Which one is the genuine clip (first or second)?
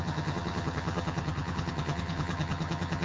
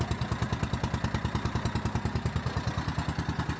second